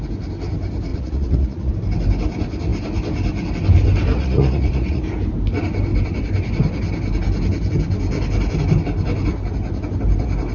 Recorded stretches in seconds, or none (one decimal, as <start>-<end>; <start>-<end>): 0.0-0.9; 1.7-4.1; 5.0-10.5